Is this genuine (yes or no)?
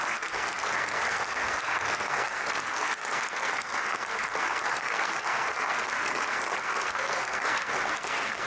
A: no